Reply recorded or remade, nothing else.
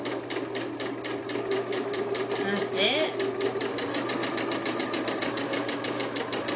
recorded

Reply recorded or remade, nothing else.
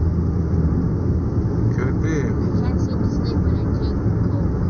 recorded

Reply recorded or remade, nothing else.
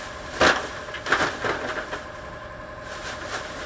recorded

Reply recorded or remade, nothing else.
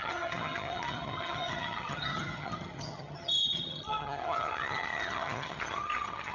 remade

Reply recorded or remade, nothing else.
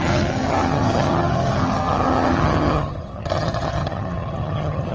remade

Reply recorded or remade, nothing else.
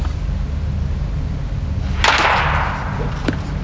recorded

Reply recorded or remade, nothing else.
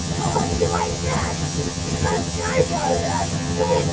remade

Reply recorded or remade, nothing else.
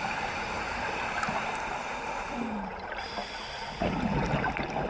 recorded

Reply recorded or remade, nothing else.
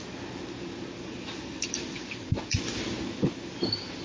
recorded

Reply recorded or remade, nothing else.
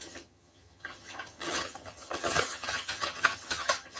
remade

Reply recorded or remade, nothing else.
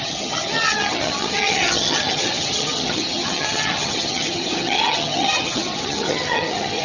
remade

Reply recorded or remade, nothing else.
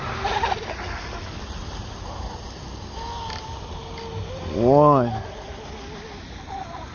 recorded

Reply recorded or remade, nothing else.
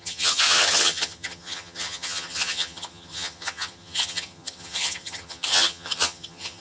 remade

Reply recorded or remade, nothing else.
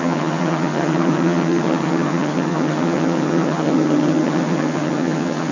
remade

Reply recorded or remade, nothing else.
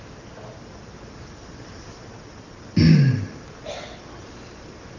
recorded